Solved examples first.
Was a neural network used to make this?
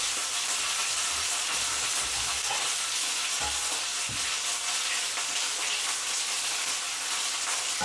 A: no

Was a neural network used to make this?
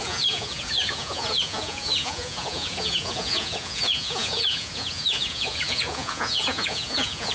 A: yes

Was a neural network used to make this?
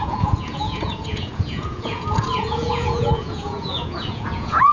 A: yes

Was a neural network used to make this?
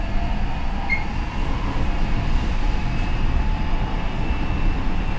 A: no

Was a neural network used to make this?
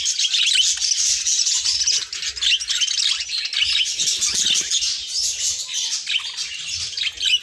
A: no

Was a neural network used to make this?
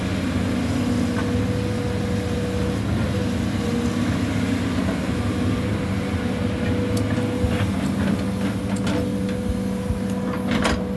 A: no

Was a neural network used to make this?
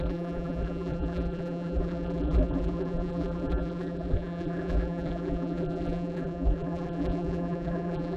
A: yes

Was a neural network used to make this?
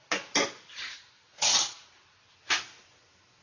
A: no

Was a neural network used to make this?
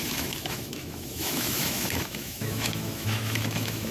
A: yes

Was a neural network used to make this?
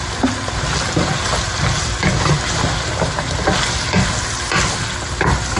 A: no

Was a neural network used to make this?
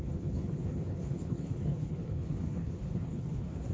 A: yes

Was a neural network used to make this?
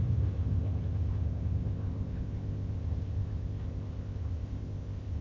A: yes